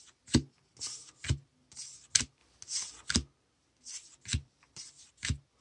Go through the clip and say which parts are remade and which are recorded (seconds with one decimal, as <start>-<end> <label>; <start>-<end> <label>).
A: 0.0-4.3 recorded; 4.3-5.1 remade; 5.1-5.6 recorded